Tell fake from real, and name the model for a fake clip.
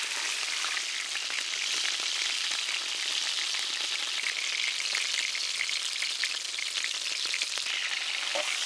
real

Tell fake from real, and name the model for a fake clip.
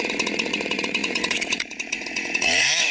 fake, vocoder, Vocos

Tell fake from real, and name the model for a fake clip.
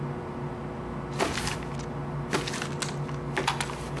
real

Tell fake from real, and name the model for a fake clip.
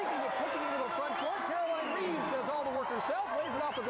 fake, vocoder, BigVGAN v2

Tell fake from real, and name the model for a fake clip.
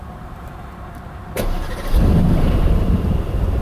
fake, vocoder, BigVGAN v2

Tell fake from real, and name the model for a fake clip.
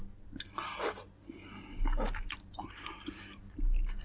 real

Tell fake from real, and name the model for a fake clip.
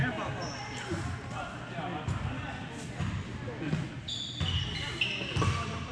real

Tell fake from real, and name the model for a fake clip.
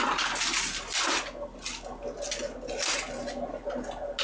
real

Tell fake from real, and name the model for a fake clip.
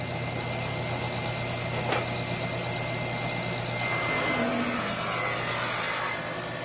real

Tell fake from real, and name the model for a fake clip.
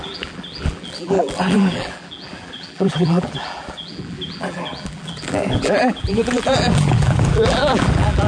fake, vocoder, BigVGAN v2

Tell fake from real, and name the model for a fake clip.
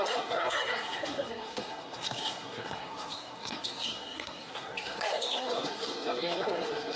fake, codec, SNAC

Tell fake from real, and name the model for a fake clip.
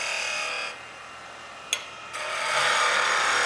real